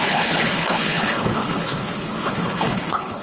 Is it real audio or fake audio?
fake